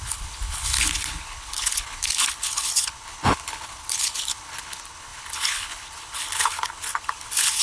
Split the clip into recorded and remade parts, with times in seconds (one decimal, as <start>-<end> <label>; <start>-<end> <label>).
0.0-7.6 remade